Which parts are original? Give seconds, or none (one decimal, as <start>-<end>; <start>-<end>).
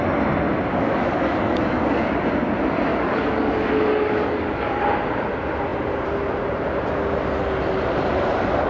0.0-0.7; 2.3-2.9; 4.8-8.7